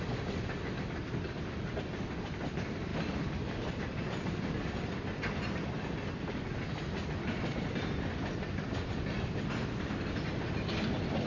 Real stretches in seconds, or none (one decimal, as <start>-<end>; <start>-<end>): 0.0-11.3